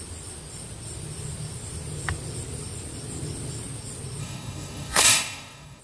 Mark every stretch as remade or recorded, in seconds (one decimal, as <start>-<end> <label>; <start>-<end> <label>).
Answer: 0.0-4.2 recorded; 4.2-5.8 remade